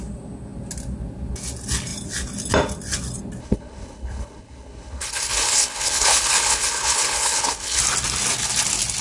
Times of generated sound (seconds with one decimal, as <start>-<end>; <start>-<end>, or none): 3.4-7.8